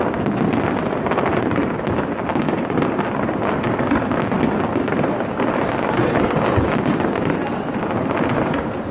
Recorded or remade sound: recorded